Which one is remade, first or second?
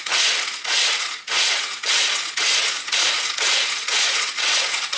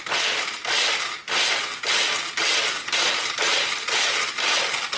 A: first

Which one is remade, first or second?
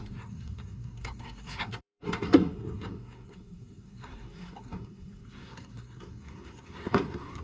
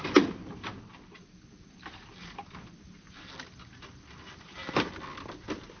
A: first